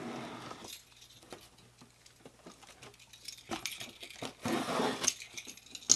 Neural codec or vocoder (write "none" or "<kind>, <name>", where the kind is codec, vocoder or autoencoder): none